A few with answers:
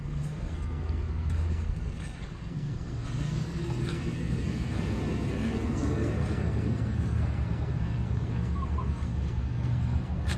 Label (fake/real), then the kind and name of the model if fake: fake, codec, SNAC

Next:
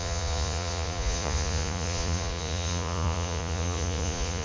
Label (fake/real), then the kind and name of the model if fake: fake, vocoder, Vocos